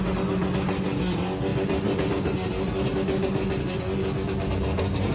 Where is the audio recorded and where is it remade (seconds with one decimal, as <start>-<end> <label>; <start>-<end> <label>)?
0.0-5.1 recorded